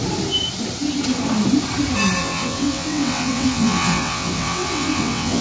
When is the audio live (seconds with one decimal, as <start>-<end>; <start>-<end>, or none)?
0.0-2.2